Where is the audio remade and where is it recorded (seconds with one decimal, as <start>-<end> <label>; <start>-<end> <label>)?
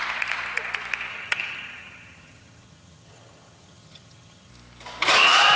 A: 0.0-1.1 recorded; 1.1-4.5 remade; 4.5-5.6 recorded